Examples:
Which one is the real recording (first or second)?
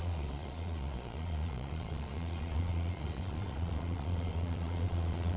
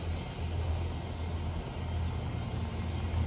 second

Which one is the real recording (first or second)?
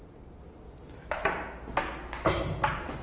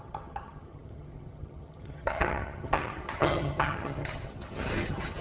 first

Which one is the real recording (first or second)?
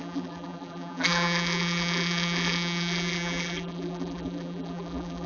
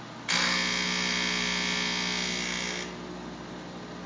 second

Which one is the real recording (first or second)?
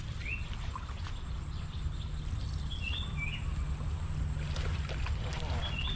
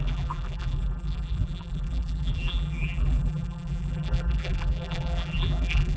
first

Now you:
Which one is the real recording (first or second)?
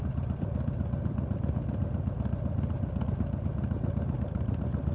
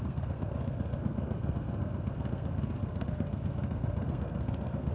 first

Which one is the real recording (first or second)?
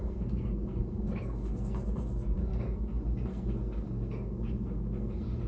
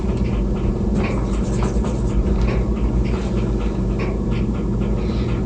second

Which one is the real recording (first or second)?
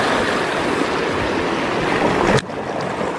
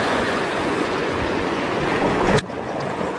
first